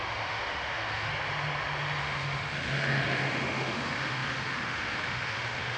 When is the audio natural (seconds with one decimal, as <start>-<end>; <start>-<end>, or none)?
1.1-2.0